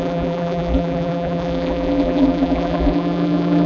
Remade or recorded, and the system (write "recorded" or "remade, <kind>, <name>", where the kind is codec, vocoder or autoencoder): remade, vocoder, BigVGAN v2